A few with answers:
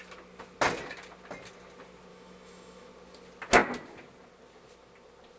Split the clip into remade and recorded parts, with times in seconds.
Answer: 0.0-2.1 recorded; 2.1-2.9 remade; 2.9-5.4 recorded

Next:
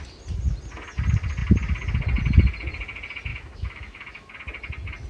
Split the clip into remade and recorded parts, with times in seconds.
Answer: 0.0-3.3 recorded; 3.3-4.3 remade; 4.3-5.1 recorded

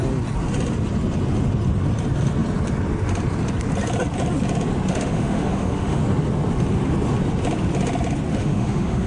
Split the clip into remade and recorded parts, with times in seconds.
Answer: 0.0-4.9 recorded; 4.9-6.0 remade; 6.0-8.3 recorded; 8.3-9.1 remade